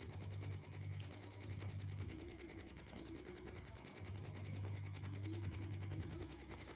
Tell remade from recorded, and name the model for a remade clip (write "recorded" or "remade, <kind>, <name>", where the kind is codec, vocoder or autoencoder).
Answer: remade, autoencoder, DAC-VAE